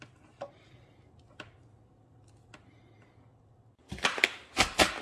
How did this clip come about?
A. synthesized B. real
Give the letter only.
B